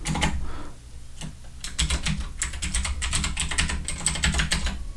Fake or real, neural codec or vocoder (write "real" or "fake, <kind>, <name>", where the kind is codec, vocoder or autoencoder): real